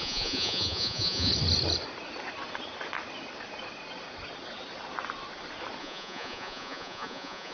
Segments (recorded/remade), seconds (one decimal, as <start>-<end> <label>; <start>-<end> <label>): 0.0-1.3 remade; 1.3-5.8 recorded; 5.8-7.5 remade

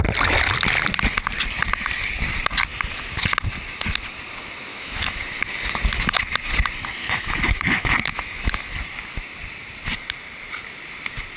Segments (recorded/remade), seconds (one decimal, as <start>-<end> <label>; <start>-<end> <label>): 0.0-4.7 recorded; 4.7-5.2 remade; 5.2-7.0 recorded; 7.0-8.7 remade; 8.7-11.4 recorded